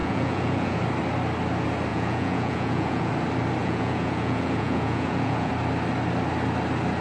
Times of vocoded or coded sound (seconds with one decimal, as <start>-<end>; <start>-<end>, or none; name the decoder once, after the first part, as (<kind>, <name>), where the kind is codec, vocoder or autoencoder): 0.0-0.8 (vocoder, Vocos); 1.9-3.1; 3.6-5.5